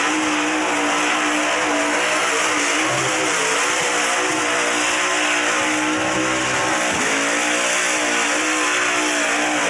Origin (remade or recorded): recorded